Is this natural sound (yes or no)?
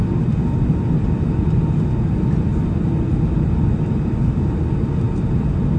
yes